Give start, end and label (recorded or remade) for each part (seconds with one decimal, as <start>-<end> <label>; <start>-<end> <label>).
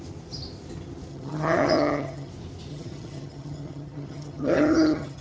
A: 0.0-1.1 recorded; 1.1-2.3 remade; 2.3-2.7 recorded; 2.7-5.2 remade